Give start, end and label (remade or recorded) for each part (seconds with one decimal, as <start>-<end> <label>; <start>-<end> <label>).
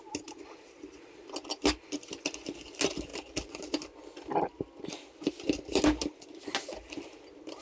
0.0-7.6 recorded